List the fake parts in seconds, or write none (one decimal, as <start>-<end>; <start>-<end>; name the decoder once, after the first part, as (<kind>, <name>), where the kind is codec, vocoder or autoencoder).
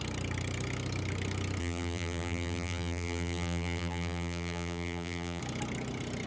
1.6-5.4 (vocoder, BigVGAN v2)